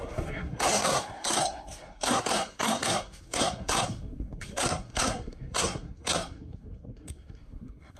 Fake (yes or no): yes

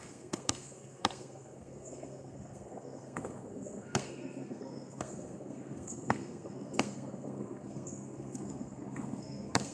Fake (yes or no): yes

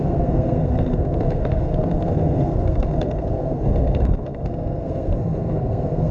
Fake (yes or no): yes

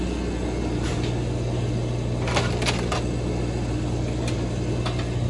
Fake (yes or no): no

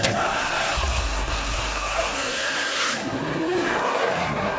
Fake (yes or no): yes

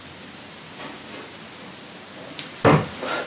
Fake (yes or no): no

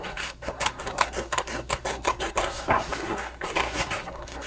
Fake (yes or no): yes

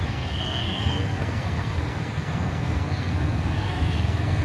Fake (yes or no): yes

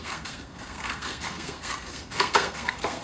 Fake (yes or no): yes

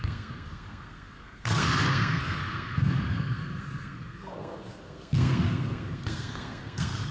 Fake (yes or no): yes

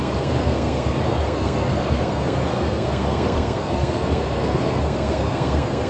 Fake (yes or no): yes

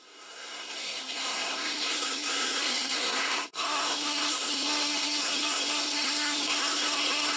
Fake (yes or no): yes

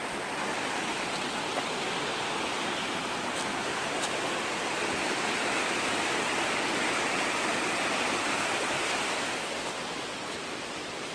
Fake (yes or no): no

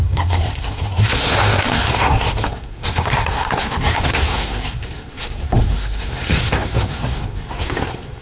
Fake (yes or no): yes